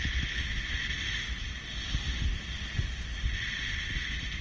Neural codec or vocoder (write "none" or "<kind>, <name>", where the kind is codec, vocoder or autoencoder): none